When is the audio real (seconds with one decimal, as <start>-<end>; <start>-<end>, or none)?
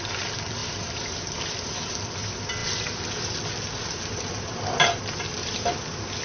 0.0-6.2